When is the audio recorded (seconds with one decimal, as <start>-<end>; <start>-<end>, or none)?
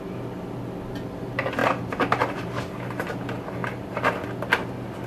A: 0.0-1.6; 2.6-3.6; 4.1-5.1